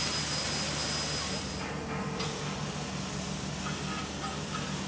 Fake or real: real